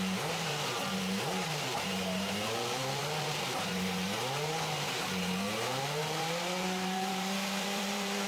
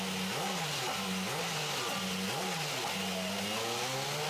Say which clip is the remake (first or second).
first